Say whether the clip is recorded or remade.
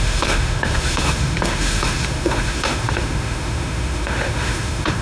remade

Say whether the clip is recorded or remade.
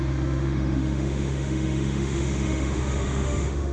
remade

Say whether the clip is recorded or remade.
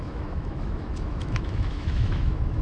remade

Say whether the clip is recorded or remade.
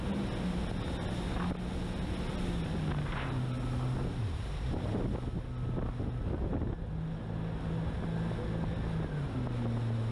recorded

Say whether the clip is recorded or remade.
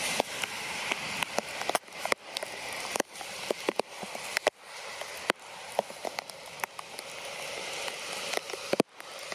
recorded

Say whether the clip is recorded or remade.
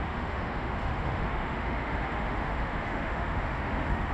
remade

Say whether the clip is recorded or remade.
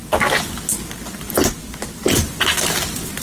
recorded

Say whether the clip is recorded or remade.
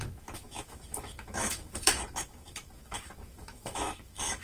remade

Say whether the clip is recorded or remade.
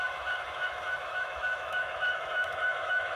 remade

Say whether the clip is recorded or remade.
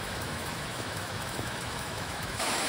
remade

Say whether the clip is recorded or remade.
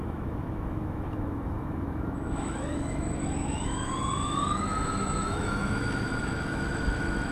remade